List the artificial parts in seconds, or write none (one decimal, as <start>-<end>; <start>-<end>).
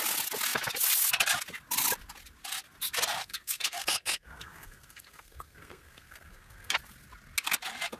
3.2-6.7